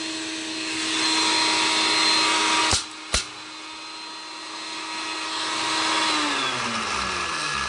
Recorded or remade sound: recorded